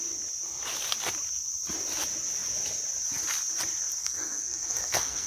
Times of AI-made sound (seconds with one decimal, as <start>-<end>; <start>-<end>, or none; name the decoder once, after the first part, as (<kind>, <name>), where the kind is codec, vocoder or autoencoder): 4.0-5.3 (codec, SNAC)